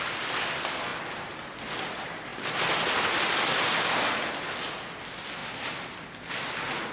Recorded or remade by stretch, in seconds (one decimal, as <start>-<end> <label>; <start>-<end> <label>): 0.0-6.9 recorded